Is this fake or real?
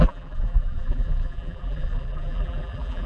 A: fake